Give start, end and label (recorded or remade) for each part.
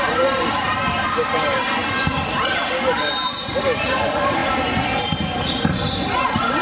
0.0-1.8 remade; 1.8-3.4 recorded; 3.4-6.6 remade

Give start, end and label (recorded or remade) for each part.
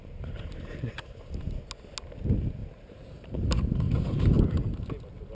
0.0-1.4 remade; 1.4-2.6 recorded; 2.6-4.4 remade; 4.4-5.3 recorded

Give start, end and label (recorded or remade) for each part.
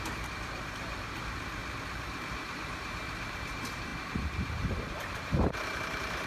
0.0-1.6 remade; 1.6-2.3 recorded; 2.3-6.3 remade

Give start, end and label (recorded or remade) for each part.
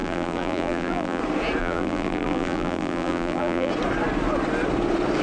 0.0-1.2 remade; 1.2-1.6 recorded; 1.6-3.7 remade; 3.7-5.2 recorded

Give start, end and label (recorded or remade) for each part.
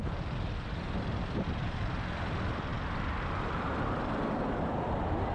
0.0-2.7 remade; 2.7-3.7 recorded; 3.7-5.3 remade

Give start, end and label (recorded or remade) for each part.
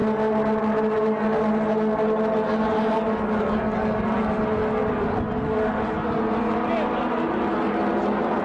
0.0-8.4 recorded